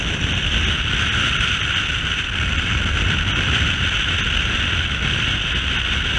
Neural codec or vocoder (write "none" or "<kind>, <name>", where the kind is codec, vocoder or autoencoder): none